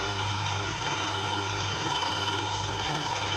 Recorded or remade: remade